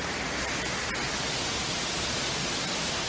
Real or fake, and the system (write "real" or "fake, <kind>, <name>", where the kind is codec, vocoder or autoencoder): real